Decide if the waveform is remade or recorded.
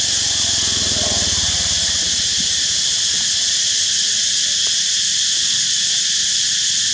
recorded